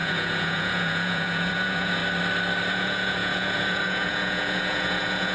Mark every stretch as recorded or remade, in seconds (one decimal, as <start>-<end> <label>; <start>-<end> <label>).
0.0-2.0 remade; 2.0-2.7 recorded; 2.7-5.3 remade